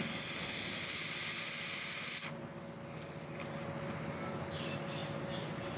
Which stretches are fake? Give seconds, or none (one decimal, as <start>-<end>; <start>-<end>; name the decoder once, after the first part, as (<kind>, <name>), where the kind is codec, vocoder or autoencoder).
none